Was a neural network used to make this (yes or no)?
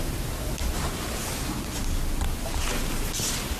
no